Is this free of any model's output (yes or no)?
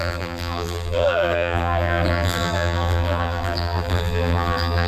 no